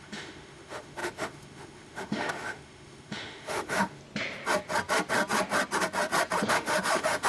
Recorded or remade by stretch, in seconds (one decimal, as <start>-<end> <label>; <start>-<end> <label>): 0.0-4.0 remade; 4.0-6.5 recorded; 6.5-7.3 remade